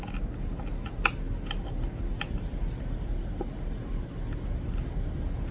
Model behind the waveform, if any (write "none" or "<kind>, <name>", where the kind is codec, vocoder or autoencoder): none